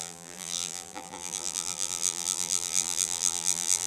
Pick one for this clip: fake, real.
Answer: fake